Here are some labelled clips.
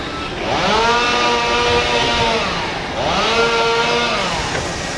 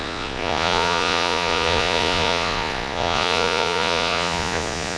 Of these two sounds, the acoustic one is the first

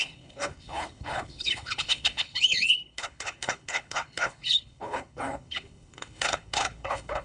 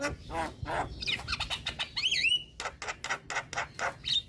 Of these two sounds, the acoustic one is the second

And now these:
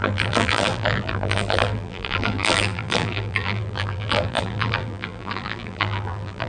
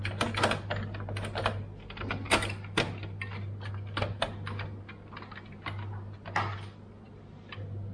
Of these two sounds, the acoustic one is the second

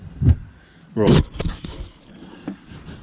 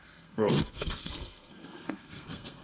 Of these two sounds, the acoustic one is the first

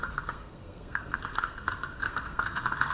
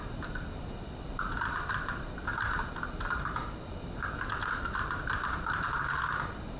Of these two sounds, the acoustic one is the second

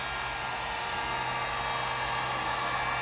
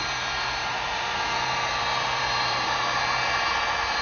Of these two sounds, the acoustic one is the first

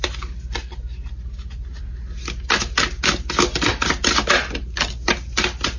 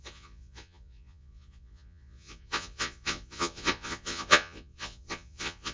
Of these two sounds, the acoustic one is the first